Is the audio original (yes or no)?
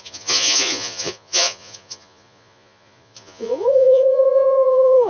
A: no